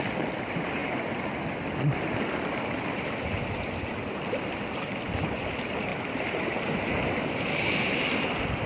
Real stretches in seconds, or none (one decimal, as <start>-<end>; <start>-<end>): 0.0-8.7